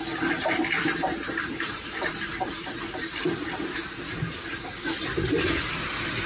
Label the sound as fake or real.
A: real